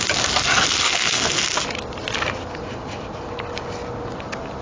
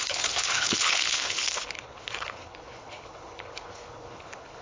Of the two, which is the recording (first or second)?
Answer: first